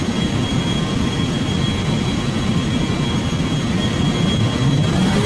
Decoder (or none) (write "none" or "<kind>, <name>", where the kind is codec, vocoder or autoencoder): none